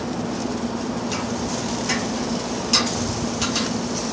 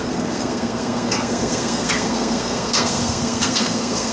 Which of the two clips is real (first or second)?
first